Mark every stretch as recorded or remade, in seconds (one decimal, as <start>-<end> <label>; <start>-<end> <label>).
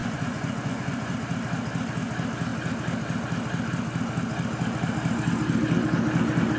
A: 0.0-1.1 remade; 1.1-6.6 recorded